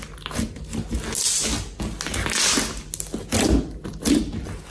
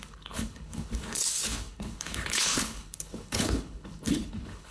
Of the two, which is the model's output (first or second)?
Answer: second